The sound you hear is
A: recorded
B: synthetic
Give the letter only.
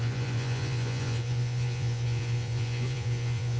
B